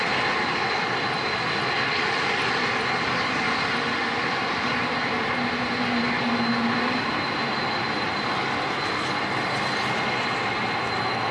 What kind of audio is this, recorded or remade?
recorded